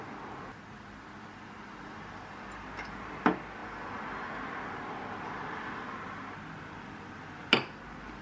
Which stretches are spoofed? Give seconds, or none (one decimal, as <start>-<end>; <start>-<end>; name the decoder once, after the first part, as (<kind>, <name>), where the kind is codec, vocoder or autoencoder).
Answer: none